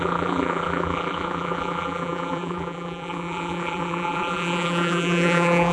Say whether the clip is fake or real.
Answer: fake